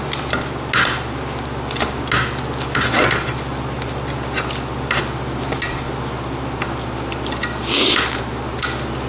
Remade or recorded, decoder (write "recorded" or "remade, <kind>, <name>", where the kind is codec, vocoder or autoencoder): recorded